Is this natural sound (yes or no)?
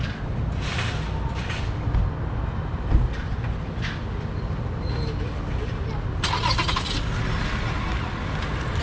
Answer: yes